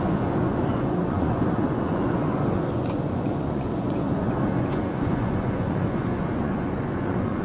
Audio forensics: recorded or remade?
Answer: remade